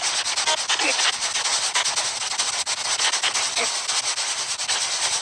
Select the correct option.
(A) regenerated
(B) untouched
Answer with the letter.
B